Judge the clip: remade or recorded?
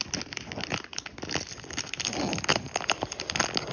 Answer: recorded